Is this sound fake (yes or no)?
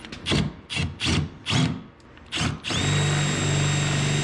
no